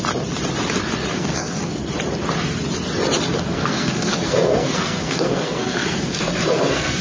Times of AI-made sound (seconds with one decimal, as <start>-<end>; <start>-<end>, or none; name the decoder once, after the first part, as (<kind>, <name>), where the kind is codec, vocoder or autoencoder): 1.1-1.8 (codec, SNAC); 3.5-7.0